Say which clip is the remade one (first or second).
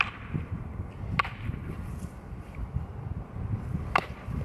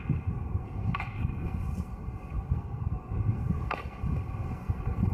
second